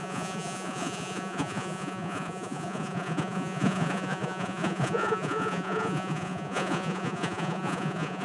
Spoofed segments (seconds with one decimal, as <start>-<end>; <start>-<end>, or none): 0.0-8.2